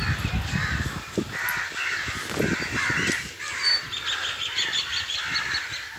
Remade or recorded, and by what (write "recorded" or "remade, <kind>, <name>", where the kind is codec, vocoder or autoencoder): recorded